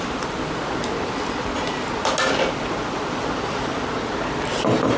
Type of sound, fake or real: real